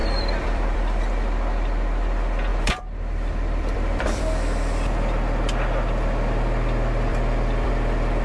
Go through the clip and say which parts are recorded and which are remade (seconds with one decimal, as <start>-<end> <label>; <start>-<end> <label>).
0.0-1.0 remade; 1.0-2.5 recorded; 2.5-4.2 remade; 4.2-7.1 recorded; 7.1-7.7 remade; 7.7-8.2 recorded